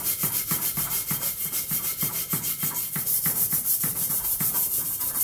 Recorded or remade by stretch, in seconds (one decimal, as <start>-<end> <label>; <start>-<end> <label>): 0.0-1.0 remade; 1.0-4.1 recorded; 4.1-5.2 remade